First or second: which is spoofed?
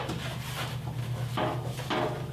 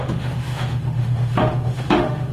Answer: second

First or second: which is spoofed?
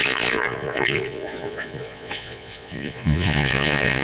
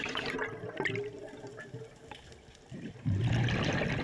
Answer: first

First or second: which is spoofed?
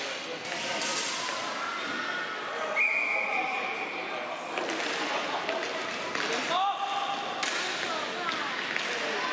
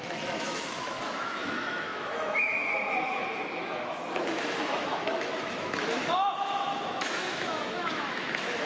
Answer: second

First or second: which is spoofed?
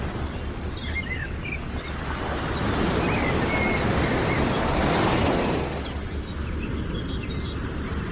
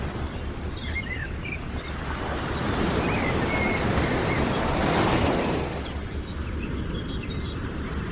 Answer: second